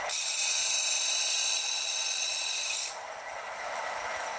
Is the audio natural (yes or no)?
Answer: no